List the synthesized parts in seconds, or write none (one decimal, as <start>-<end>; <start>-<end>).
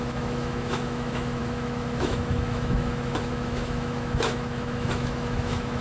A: 0.0-5.8